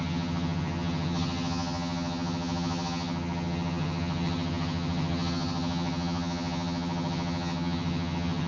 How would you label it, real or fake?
fake